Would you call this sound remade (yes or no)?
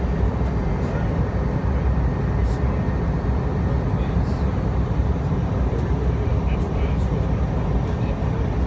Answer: no